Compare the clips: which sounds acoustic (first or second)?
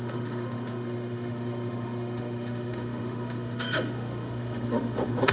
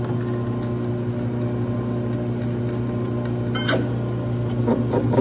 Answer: second